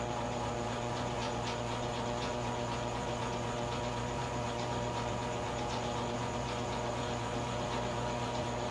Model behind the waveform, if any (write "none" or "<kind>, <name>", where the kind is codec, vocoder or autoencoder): vocoder, Vocos